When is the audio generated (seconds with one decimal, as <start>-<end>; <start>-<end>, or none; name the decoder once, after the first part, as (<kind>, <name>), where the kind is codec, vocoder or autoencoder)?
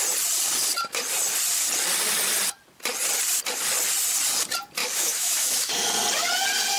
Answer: 4.8-5.7 (autoencoder, DAC-VAE)